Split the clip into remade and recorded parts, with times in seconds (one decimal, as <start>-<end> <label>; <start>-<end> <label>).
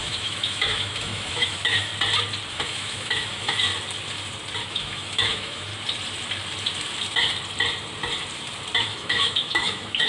0.0-1.9 remade; 1.9-2.5 recorded; 2.5-3.7 remade; 3.7-4.7 recorded; 4.7-5.7 remade; 5.7-8.8 recorded; 8.8-10.1 remade